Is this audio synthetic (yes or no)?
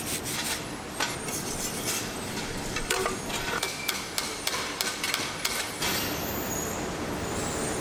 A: no